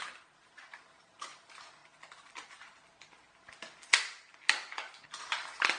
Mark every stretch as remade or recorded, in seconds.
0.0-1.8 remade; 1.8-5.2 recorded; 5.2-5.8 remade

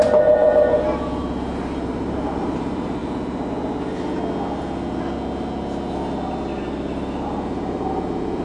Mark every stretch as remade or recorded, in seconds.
0.0-3.0 remade; 3.0-6.6 recorded; 6.6-8.4 remade

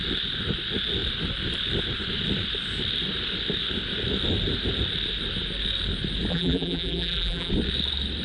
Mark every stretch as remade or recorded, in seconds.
0.0-6.3 recorded; 6.3-7.5 remade; 7.5-8.2 recorded

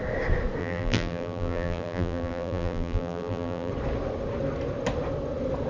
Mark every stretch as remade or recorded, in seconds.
0.0-0.6 recorded; 0.6-3.7 remade; 3.7-5.7 recorded

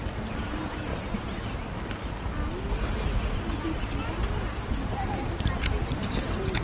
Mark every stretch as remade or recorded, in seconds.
0.0-6.6 recorded

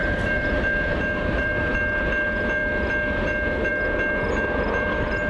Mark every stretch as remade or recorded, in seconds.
0.0-1.7 remade; 1.7-5.3 recorded

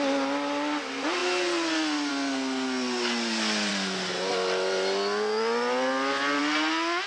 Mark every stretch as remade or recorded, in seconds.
0.0-7.1 recorded

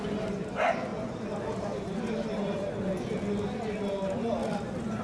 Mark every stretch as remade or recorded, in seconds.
0.0-5.0 recorded